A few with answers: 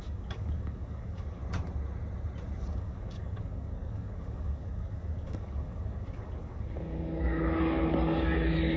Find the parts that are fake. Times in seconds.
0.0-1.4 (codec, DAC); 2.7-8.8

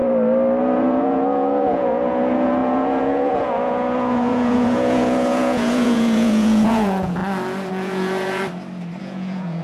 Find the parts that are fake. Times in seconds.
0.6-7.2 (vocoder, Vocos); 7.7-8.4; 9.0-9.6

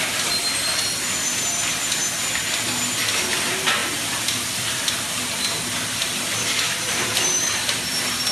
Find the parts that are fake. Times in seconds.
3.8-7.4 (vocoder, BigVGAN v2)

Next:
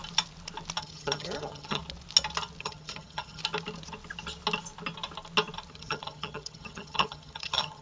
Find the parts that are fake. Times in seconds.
0.8-1.8 (vocoder, HiFi-GAN); 2.6-3.4; 5.7-7.8

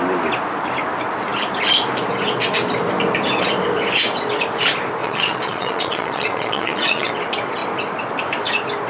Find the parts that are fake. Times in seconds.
5.0-7.1 (vocoder, Vocos)